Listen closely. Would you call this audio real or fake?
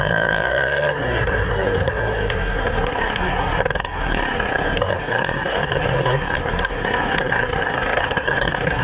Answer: fake